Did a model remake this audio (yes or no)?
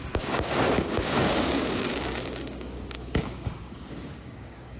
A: yes